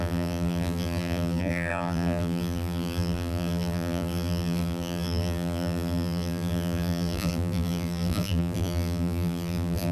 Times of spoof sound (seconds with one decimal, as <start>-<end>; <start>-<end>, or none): 0.0-9.9